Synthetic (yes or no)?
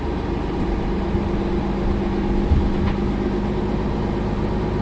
no